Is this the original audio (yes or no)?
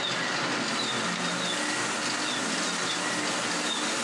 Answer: yes